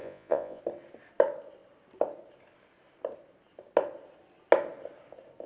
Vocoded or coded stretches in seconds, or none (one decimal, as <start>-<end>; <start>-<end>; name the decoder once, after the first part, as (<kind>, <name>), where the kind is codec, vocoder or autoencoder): 0.0-0.6 (vocoder, Vocos)